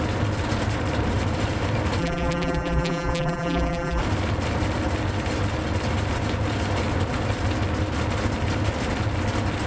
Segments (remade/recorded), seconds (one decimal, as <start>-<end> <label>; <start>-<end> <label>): 0.0-2.0 recorded; 2.0-4.0 remade; 4.0-9.7 recorded